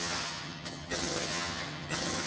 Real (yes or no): no